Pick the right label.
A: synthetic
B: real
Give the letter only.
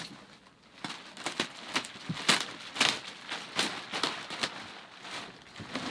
B